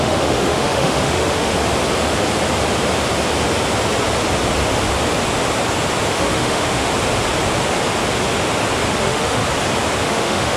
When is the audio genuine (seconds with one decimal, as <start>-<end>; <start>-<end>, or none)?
1.6-6.1; 6.9-9.0; 9.4-10.0